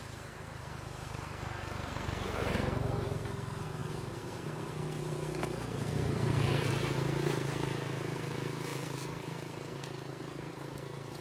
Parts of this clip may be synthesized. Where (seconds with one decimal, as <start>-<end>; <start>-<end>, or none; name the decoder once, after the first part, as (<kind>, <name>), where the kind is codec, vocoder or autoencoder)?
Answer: 0.0-11.2 (codec, SNAC)